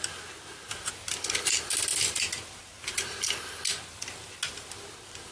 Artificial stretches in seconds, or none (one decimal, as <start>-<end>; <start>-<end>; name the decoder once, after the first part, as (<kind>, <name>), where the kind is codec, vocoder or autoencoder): none